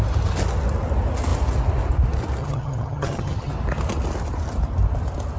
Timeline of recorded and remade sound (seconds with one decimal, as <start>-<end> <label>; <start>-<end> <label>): 0.0-2.4 recorded; 2.4-3.5 remade; 3.5-5.4 recorded